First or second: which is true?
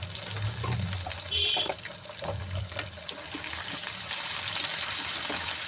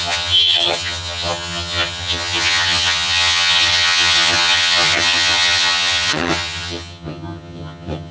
first